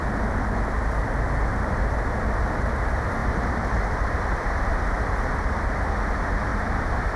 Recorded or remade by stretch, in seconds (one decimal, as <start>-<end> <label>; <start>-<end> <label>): 0.0-3.2 recorded; 3.2-5.7 remade; 5.7-6.5 recorded; 6.5-7.2 remade